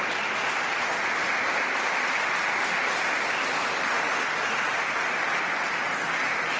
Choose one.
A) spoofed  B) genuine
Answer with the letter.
B